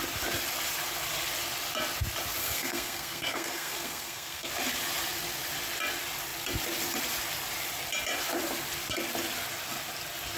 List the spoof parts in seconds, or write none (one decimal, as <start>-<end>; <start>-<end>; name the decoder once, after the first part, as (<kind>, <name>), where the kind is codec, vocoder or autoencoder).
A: 2.4-4.5 (codec, SNAC)